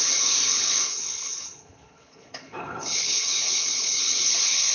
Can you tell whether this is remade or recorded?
remade